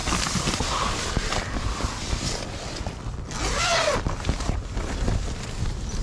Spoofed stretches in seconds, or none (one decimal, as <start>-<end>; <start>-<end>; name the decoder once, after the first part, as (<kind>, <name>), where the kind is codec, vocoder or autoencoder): none